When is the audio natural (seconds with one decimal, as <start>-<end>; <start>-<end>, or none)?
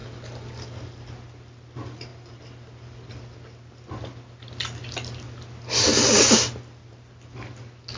0.0-8.0